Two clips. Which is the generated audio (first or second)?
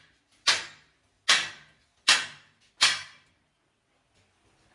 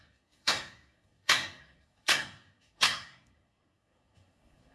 second